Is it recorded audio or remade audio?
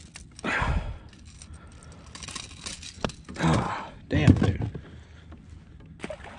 recorded